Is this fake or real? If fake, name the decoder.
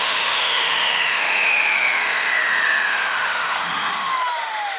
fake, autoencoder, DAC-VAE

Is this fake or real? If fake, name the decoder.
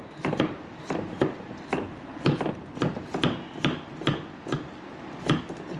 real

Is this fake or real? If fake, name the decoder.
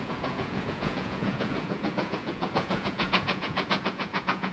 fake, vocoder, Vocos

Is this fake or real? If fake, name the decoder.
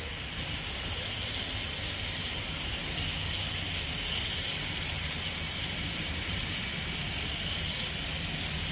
real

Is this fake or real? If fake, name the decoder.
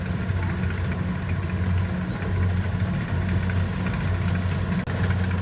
real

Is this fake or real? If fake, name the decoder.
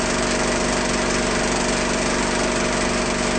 real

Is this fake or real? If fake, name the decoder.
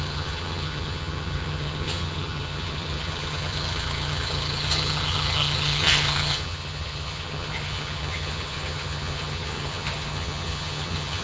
fake, vocoder, HiFi-GAN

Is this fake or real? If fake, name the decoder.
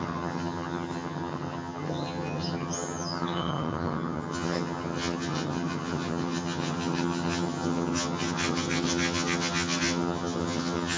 fake, vocoder, HiFi-GAN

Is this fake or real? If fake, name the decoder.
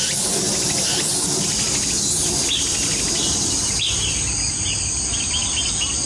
real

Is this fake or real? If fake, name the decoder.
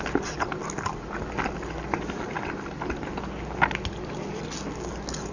real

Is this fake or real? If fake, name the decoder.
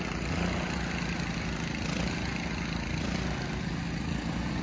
real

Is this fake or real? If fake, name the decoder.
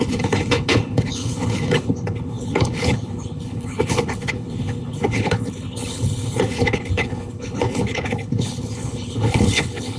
fake, codec, HILCodec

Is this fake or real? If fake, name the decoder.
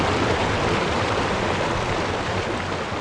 real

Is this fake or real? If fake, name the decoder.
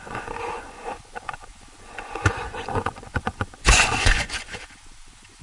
fake, vocoder, Vocos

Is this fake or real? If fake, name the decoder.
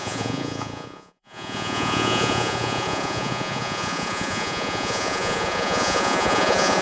fake, vocoder, Vocos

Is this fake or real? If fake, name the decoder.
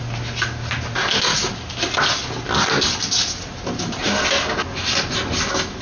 real